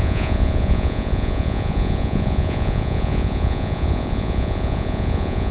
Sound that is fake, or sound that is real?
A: fake